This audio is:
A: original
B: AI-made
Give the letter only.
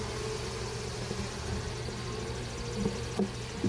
A